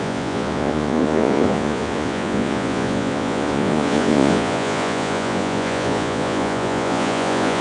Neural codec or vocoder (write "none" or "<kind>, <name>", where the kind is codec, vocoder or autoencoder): vocoder, Vocos